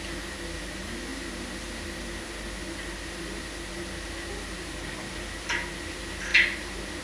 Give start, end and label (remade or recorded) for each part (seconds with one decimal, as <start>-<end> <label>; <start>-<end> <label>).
0.0-7.0 recorded